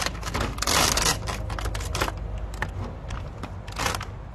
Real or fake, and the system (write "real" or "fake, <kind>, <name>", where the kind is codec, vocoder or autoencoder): real